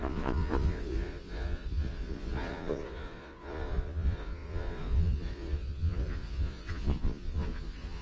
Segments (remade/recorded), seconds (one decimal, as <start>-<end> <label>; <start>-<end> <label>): 0.0-8.0 remade